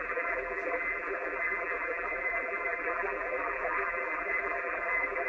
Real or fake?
fake